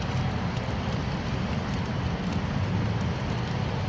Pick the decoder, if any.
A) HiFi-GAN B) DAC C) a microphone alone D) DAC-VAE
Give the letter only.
C